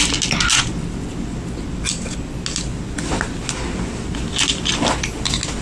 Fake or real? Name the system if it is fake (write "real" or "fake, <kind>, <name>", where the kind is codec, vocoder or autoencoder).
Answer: real